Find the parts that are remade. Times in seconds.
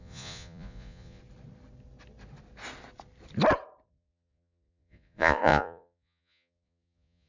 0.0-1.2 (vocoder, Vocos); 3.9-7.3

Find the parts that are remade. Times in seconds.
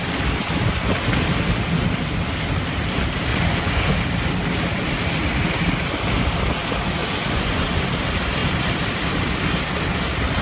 3.3-3.9 (vocoder, Vocos); 7.0-7.8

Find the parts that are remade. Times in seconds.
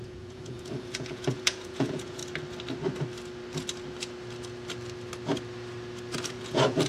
0.0-2.2 (vocoder, Vocos); 6.3-6.9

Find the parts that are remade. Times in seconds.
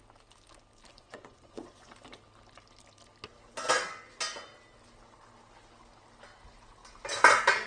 0.9-1.9 (vocoder, Vocos)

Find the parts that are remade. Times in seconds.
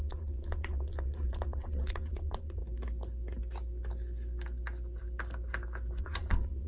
0.0-2.6 (vocoder, Vocos); 6.0-6.7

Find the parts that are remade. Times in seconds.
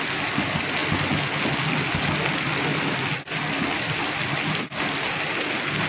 none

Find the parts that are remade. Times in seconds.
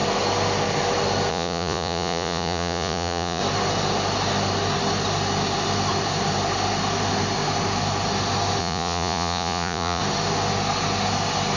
1.3-3.4 (vocoder, Vocos); 8.6-10.0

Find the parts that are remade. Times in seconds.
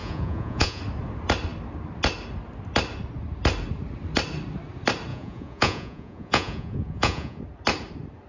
0.0-0.8 (vocoder, Vocos); 5.1-7.4